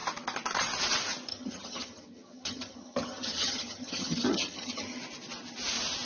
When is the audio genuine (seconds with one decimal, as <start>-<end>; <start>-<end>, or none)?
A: 0.0-1.3; 5.0-6.1